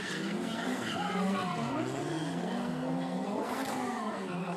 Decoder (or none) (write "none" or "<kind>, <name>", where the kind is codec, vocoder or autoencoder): codec, SNAC